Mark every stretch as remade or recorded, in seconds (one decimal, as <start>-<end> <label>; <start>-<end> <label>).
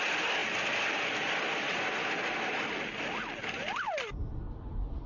0.0-5.1 recorded